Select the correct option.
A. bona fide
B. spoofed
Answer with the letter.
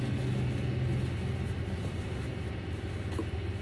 A